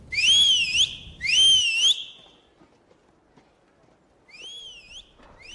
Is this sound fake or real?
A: real